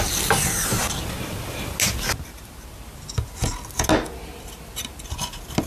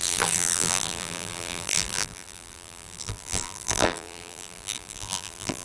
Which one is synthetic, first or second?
second